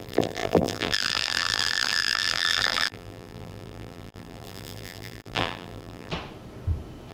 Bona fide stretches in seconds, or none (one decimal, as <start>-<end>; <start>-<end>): 6.1-7.1